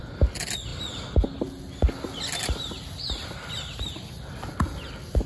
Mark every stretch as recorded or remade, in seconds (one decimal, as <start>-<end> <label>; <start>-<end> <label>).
0.0-5.3 recorded